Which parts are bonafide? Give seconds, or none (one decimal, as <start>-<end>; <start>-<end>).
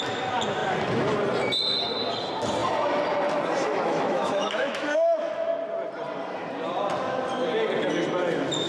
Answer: 0.0-3.6; 5.6-8.7